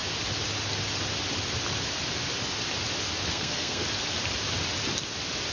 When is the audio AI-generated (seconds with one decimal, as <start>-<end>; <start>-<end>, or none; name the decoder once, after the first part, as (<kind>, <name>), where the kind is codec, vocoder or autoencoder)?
3.3-3.8 (codec, SNAC)